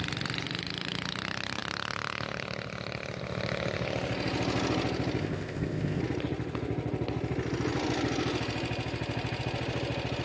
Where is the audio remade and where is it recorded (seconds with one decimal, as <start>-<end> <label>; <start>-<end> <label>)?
0.0-5.2 recorded; 5.2-6.0 remade; 6.0-10.2 recorded